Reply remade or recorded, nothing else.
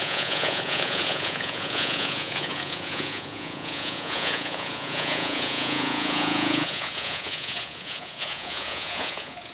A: remade